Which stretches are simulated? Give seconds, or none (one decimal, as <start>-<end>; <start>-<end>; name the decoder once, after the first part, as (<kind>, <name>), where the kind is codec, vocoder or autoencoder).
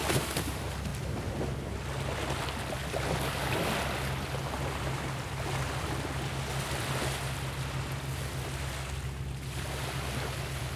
none